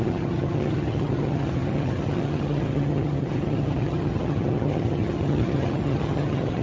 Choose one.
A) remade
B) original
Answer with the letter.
A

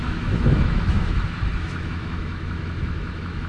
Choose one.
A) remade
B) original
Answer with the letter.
A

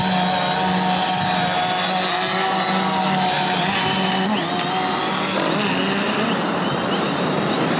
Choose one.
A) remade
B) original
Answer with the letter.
B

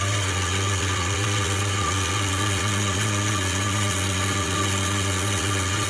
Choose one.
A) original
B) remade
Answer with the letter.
B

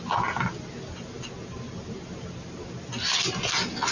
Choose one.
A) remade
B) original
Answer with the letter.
B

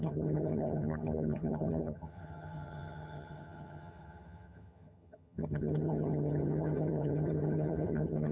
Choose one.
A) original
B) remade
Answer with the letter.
B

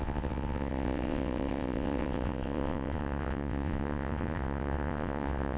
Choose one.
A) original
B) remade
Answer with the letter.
B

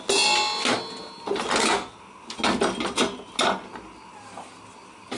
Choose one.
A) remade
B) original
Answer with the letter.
B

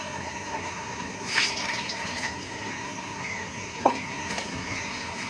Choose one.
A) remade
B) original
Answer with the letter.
A